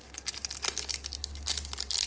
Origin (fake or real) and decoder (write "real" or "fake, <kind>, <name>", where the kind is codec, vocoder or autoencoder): real